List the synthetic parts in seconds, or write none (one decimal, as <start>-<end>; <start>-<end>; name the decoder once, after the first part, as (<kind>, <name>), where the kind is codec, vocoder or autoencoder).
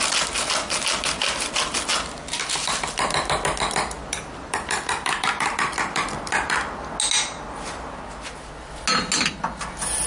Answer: 1.9-6.9 (vocoder, BigVGAN v2)